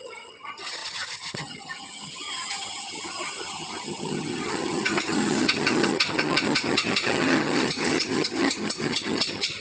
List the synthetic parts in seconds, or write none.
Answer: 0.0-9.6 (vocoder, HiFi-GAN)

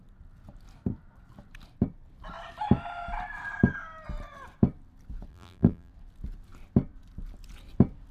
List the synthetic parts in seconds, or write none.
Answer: 5.3-5.9 (vocoder, BigVGAN v2)

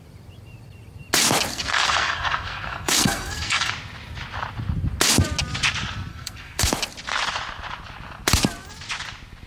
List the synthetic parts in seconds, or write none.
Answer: 1.5-3.7 (codec, SNAC); 6.1-6.7

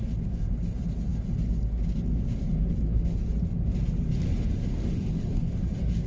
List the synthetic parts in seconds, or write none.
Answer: none